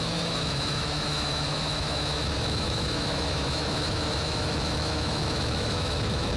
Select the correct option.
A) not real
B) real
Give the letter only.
A